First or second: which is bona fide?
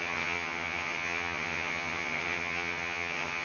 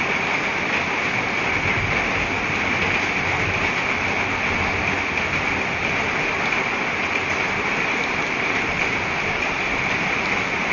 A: second